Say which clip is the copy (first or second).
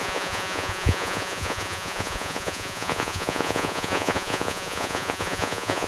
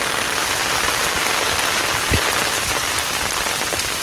first